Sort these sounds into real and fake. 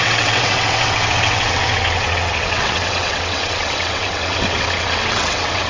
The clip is fake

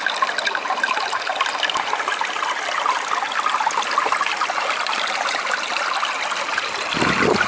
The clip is real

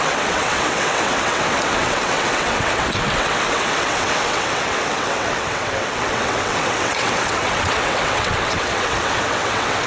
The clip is fake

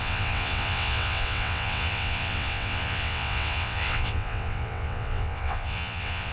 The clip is fake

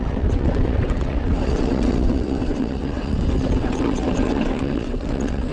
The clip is fake